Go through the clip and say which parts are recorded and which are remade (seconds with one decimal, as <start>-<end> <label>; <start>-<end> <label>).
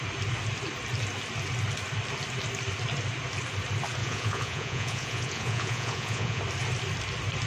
0.0-4.0 recorded; 4.0-6.4 remade; 6.4-7.5 recorded